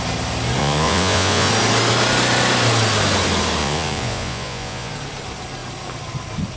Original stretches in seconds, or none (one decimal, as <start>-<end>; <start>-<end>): 0.0-0.6; 1.5-3.6; 4.9-6.6